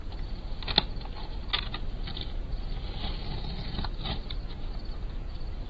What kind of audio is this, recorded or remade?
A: recorded